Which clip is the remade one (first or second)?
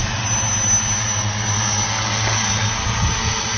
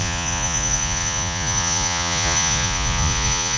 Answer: second